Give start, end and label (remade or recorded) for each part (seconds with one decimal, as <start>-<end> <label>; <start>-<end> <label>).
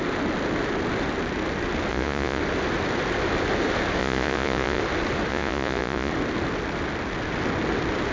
0.0-1.9 recorded; 1.9-2.4 remade; 2.4-4.0 recorded; 4.0-4.8 remade; 4.8-5.3 recorded; 5.3-6.1 remade; 6.1-8.1 recorded